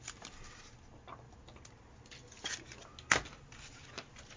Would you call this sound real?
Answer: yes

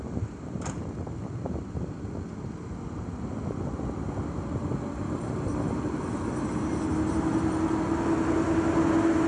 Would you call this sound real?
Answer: yes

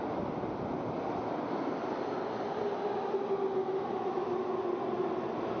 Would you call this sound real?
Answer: yes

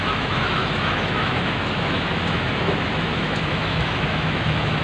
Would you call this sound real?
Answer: no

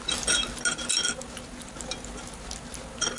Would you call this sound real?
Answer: yes